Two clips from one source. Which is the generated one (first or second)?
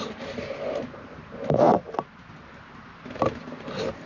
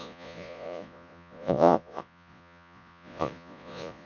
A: second